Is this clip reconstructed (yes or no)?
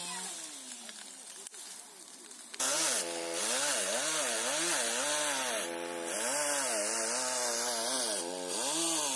no